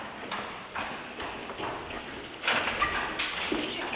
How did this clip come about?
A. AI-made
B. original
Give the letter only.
B